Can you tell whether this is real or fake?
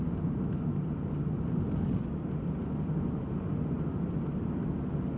real